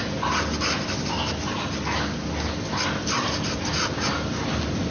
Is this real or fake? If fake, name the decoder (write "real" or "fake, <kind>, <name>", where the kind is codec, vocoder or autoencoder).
real